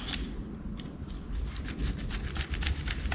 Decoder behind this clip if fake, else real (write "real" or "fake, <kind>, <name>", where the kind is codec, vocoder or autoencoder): real